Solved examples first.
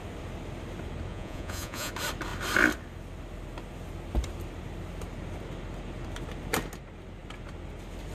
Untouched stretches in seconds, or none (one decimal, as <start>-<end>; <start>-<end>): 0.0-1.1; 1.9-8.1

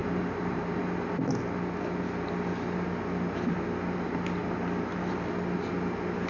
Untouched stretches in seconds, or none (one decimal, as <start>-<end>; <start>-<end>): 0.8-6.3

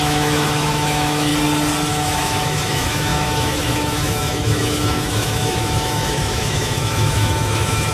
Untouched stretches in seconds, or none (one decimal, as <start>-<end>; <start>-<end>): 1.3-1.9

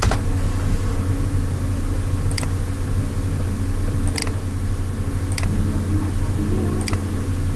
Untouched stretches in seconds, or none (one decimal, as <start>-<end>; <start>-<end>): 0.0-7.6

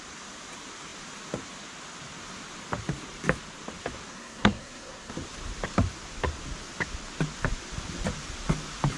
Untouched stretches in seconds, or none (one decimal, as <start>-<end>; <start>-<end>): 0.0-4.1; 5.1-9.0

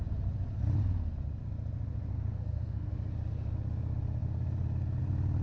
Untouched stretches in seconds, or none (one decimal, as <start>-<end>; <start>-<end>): 0.0-2.1; 2.9-5.4

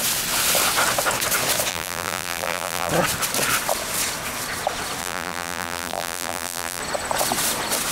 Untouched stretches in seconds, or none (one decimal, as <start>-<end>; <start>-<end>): 0.0-1.7; 2.9-5.0; 6.8-7.9